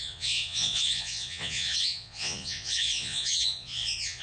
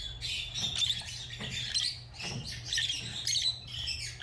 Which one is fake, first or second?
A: first